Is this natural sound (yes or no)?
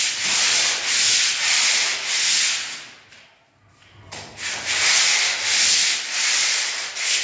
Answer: yes